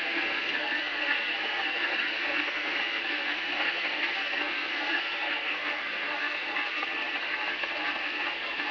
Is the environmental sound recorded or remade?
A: remade